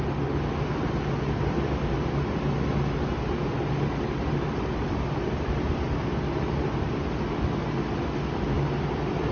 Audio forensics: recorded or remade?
recorded